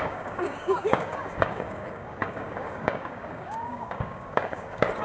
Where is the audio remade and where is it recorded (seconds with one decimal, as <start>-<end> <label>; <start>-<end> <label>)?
0.0-5.0 remade